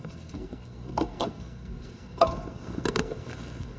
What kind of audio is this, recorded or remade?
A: remade